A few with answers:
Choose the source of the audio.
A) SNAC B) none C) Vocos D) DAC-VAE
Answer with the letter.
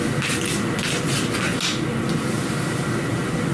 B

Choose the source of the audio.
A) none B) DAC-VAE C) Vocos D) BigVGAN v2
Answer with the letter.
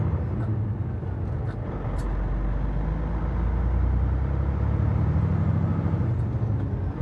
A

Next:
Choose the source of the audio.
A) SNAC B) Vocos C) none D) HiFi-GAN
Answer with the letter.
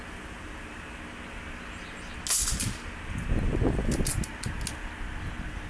C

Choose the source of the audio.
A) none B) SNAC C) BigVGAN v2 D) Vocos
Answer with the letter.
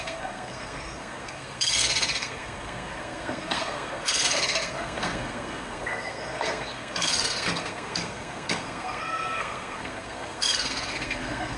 B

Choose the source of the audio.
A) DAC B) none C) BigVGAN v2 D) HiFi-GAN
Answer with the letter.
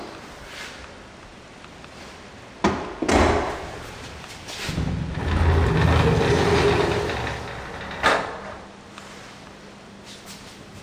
B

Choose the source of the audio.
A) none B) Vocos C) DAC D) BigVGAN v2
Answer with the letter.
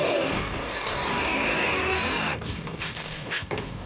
C